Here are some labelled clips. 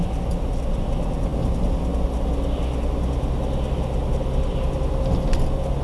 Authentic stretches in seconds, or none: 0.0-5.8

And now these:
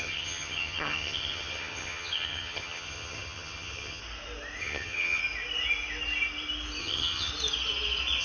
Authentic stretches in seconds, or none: 4.0-4.6; 5.2-6.8; 7.3-8.2